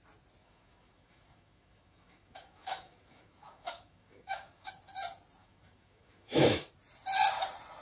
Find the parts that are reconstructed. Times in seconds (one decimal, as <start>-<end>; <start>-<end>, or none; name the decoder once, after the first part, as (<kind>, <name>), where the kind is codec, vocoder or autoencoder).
0.4-4.7 (autoencoder, DAC-VAE); 5.4-6.7